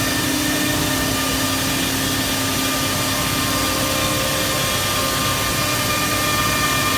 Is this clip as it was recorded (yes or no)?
yes